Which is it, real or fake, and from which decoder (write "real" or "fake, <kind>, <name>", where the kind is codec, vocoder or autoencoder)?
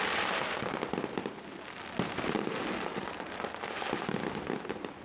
real